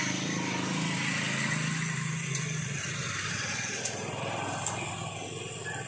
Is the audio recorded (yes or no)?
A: yes